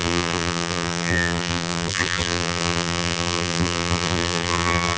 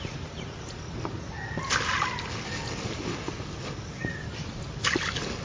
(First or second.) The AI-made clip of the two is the first